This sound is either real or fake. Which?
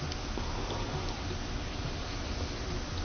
real